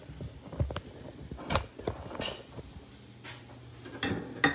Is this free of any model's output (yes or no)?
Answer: yes